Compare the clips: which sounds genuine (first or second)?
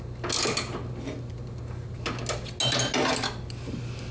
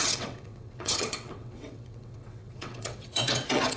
first